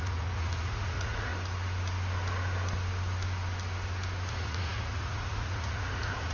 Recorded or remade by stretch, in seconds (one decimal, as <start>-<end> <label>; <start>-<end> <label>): 0.0-1.3 remade; 1.3-4.3 recorded; 4.3-6.3 remade